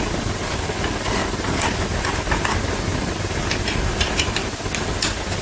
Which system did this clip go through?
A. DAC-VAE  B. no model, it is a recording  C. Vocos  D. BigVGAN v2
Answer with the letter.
B